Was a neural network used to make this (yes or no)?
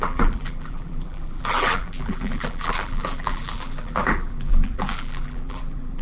yes